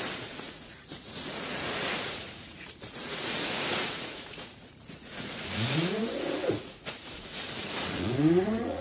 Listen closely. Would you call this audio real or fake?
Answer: fake